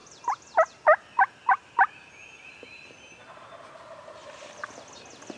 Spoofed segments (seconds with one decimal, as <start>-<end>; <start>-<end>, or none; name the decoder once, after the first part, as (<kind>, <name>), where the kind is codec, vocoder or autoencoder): none